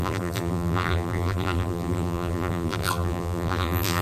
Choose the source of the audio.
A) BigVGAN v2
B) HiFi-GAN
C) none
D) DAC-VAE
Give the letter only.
A